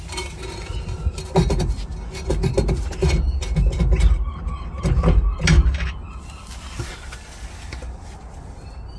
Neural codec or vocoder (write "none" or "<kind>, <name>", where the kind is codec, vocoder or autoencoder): none